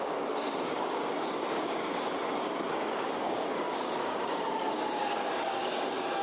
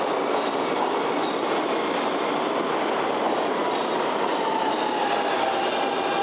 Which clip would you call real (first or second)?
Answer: second